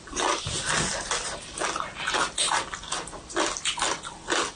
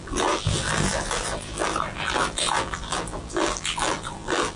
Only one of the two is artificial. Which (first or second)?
second